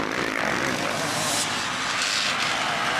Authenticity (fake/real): real